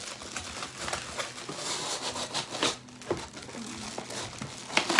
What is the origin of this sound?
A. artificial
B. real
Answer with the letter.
B